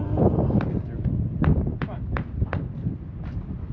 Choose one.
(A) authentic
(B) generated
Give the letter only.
A